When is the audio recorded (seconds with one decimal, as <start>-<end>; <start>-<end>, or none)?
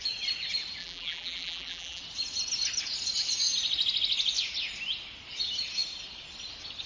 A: 0.0-0.8; 2.0-6.9